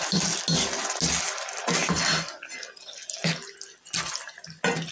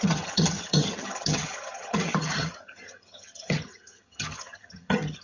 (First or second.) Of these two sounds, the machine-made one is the second